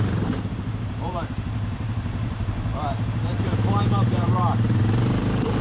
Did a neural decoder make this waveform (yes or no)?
yes